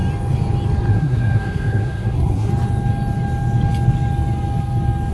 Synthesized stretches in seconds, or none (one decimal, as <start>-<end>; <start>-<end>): 0.9-2.5